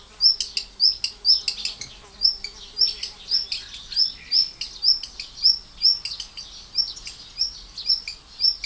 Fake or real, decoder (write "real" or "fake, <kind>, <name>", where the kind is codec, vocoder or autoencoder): real